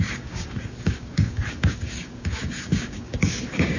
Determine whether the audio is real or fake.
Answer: fake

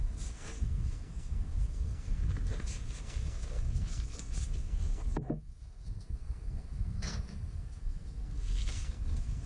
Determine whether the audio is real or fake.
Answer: fake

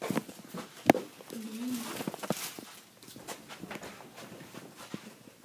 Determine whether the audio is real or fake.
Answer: real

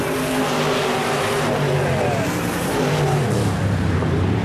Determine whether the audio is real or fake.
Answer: fake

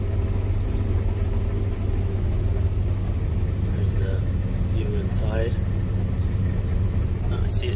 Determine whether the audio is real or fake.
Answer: real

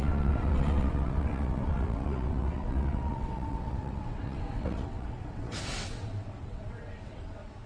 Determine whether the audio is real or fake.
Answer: fake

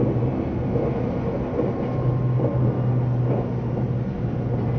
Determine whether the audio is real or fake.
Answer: real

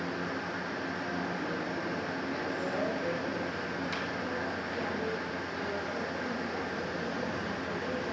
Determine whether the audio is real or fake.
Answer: real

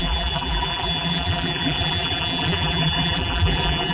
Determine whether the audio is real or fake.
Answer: fake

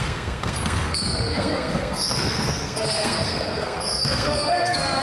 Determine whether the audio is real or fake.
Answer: fake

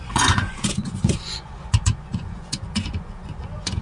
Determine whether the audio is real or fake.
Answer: fake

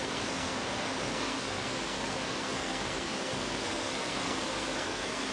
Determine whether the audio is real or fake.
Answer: fake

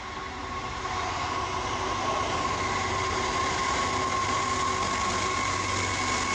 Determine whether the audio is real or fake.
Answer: real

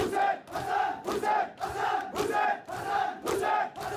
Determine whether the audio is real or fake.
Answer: real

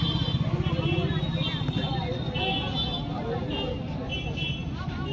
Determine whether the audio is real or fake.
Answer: real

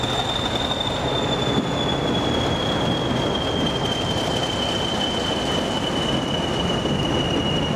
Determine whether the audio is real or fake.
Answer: real